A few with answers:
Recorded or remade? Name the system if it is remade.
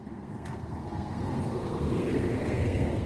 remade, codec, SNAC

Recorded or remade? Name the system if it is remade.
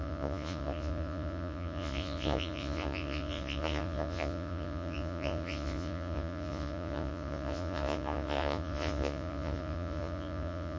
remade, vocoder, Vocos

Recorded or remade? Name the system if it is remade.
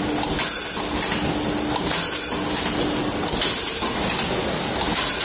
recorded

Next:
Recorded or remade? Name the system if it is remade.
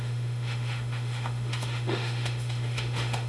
remade, autoencoder, DAC-VAE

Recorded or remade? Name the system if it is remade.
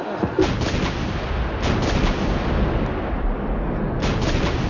recorded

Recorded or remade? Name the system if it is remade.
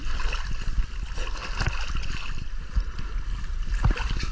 recorded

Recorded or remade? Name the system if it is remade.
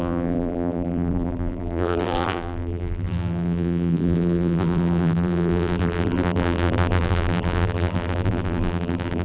remade, vocoder, BigVGAN v2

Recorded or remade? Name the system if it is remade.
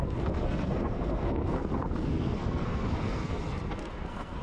remade, codec, SNAC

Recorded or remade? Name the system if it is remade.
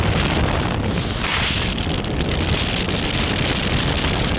recorded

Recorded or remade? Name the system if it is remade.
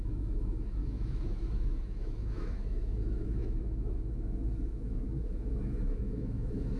remade, autoencoder, DAC-VAE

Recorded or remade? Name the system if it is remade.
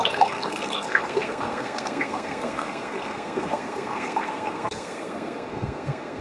remade, codec, SNAC